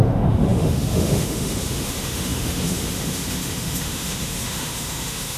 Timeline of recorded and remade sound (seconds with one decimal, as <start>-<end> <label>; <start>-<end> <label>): 0.0-5.4 remade